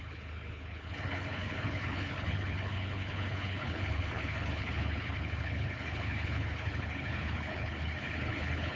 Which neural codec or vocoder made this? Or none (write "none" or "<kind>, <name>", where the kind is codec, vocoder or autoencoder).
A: codec, HILCodec